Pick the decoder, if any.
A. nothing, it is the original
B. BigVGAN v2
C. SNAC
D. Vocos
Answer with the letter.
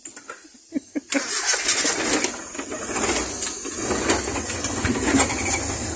A